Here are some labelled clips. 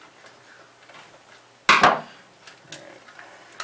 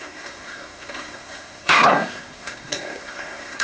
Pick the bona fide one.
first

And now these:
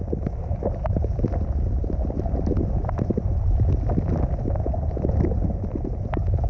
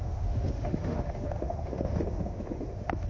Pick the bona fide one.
first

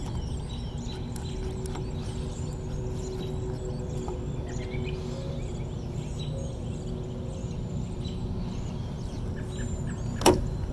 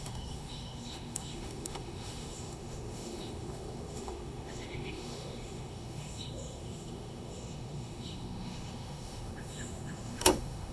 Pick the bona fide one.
first